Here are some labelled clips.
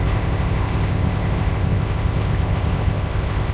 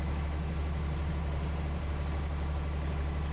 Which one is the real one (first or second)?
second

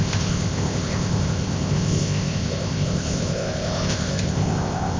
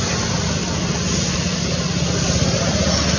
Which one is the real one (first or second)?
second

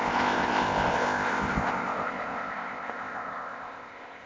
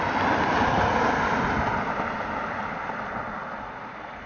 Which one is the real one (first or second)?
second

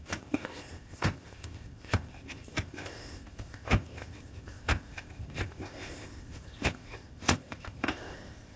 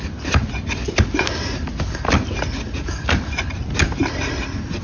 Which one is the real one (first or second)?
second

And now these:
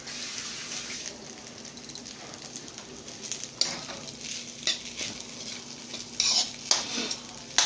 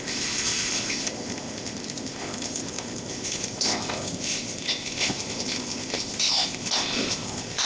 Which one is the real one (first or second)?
first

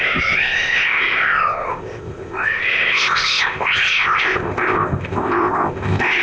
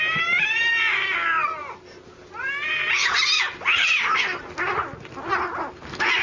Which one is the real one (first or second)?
second